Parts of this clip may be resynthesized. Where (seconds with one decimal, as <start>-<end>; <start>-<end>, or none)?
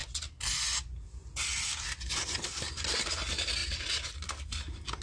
none